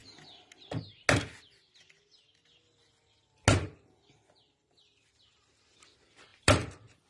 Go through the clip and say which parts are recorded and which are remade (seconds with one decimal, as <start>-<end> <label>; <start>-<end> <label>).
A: 0.0-6.3 recorded; 6.3-7.1 remade